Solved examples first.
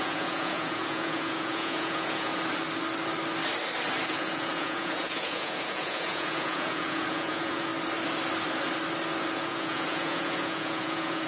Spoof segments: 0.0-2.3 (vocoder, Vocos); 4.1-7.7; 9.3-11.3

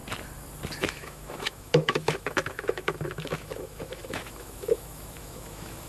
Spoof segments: 0.8-5.9 (autoencoder, DAC-VAE)

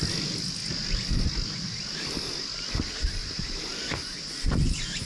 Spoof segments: none